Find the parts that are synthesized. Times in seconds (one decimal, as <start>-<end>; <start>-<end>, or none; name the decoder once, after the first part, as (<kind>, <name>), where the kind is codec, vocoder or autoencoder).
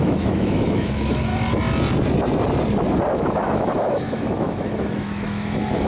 0.0-1.3 (autoencoder, DAC-VAE); 3.1-5.9